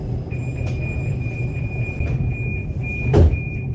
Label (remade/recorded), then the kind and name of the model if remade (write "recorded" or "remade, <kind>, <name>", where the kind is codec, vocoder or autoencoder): remade, vocoder, BigVGAN v2